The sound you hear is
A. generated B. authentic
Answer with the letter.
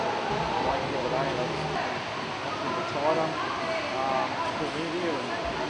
B